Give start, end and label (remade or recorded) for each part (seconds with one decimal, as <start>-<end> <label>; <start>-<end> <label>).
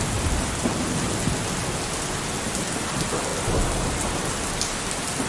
0.0-5.3 recorded